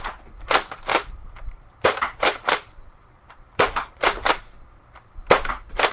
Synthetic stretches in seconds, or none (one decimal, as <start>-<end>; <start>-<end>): 0.9-4.4